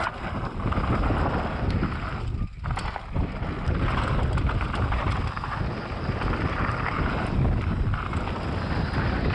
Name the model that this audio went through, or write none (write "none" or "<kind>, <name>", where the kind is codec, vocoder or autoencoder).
none